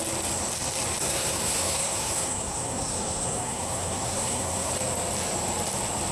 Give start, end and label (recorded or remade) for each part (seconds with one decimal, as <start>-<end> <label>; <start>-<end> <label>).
0.0-1.0 recorded; 1.0-4.7 remade; 4.7-6.1 recorded